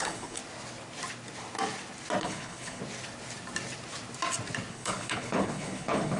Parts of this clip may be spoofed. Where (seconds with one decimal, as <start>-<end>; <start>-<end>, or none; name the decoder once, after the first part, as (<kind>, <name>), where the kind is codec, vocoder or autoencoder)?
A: 0.0-0.4 (codec, HILCodec); 2.2-2.8; 4.7-6.2